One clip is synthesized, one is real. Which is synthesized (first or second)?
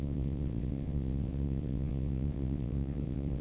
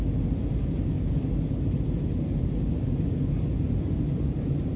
first